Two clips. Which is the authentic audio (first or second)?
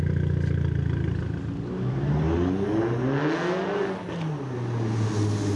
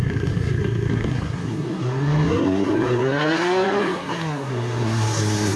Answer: first